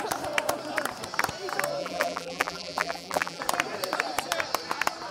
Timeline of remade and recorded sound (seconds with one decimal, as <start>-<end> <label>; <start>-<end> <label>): 0.0-1.8 recorded; 1.8-3.4 remade; 3.4-5.1 recorded